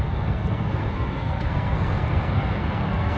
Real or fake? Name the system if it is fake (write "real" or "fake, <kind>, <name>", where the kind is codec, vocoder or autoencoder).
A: fake, codec, SNAC